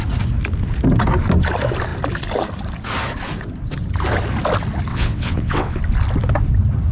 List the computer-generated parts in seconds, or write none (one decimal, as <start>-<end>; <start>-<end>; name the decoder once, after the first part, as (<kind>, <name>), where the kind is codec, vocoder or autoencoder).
4.9-5.8 (vocoder, WaveNeXt)